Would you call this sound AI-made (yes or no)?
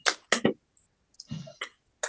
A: no